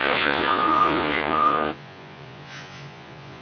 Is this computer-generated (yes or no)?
yes